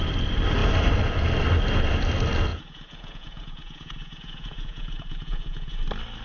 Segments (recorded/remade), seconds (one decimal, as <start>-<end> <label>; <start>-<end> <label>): 0.0-2.5 recorded; 2.5-5.8 remade; 5.8-6.2 recorded